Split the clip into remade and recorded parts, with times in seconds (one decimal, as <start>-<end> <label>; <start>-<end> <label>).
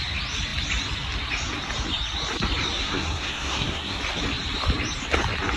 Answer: 0.0-2.8 recorded; 2.8-4.0 remade; 4.0-5.6 recorded